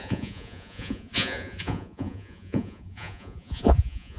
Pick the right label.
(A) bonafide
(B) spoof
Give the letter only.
B